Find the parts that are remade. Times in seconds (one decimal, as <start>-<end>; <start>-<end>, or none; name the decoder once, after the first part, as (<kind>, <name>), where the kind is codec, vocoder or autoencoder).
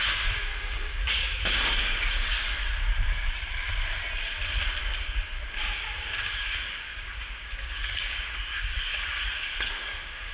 0.0-2.6 (codec, DAC); 4.8-10.3